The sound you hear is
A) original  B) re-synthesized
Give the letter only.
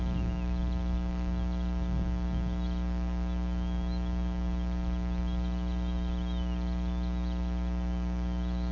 A